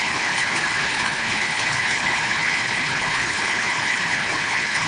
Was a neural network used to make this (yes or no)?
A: yes